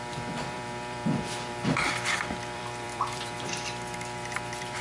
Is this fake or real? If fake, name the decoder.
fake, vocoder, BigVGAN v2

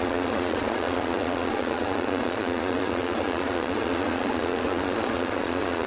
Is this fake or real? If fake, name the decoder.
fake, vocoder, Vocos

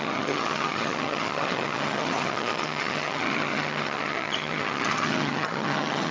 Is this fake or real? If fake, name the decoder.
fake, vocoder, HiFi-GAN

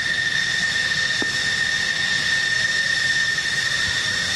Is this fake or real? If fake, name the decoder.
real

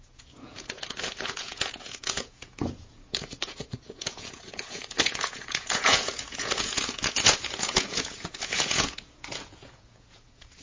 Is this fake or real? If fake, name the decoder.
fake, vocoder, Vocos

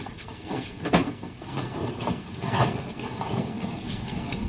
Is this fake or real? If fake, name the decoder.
fake, codec, SNAC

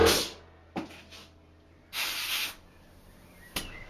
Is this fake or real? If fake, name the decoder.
real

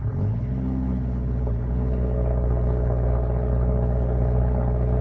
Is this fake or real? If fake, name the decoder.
fake, codec, HILCodec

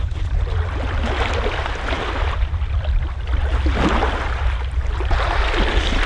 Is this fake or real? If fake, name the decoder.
real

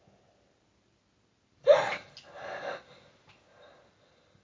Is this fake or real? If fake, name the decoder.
real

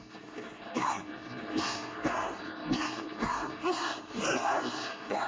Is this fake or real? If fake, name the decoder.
fake, codec, SNAC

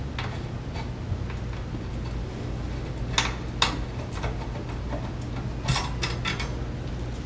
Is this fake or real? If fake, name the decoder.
real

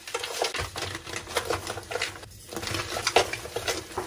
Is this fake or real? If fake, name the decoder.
real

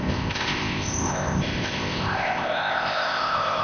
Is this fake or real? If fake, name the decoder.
fake, codec, ZipCodec